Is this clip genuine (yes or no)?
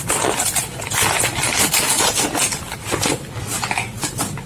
yes